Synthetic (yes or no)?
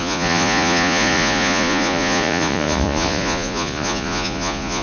yes